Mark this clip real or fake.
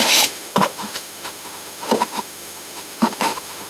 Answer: fake